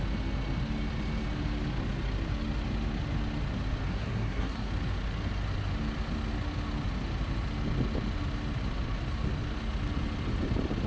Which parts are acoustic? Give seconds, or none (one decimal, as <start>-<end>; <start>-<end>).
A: 0.0-3.9; 4.7-10.9